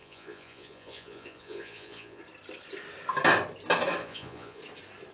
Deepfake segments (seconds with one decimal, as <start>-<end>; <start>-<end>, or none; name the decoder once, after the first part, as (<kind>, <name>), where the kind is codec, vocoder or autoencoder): 0.0-2.2 (vocoder, Vocos); 4.0-4.6